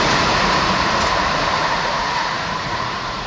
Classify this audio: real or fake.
fake